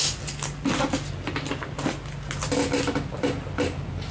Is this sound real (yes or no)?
yes